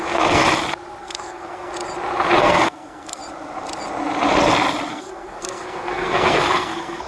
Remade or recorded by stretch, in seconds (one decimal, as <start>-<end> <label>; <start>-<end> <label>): 0.0-0.4 remade; 0.4-1.0 recorded; 1.0-1.7 remade; 1.7-2.4 recorded; 2.4-3.2 remade; 3.2-4.9 recorded; 4.9-7.1 remade